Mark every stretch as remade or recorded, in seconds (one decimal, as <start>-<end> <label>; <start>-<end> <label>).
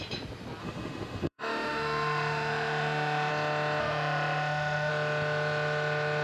0.0-0.6 recorded; 0.6-3.3 remade; 3.3-3.8 recorded; 3.8-4.9 remade; 4.9-6.2 recorded